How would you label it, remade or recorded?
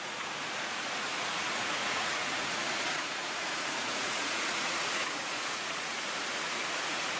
remade